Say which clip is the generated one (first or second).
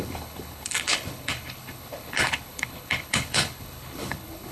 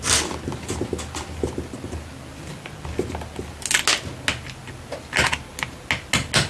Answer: first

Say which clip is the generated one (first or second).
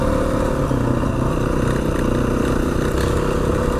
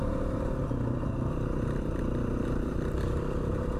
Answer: second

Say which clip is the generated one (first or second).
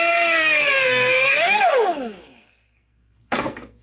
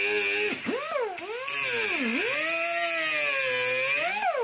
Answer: first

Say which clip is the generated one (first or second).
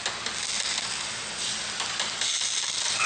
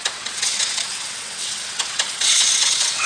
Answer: second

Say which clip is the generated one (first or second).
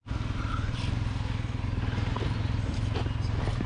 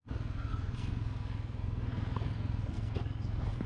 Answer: second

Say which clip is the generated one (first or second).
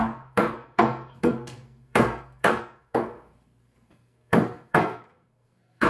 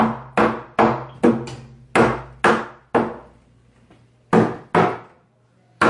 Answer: first